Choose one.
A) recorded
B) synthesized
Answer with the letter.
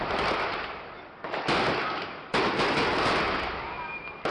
A